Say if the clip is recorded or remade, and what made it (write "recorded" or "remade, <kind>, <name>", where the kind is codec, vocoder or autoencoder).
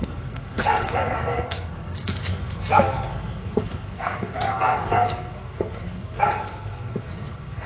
remade, codec, SNAC